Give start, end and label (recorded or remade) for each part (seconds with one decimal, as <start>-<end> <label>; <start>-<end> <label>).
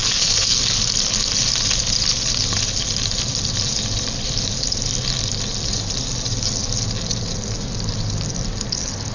0.0-0.6 remade; 0.6-9.1 recorded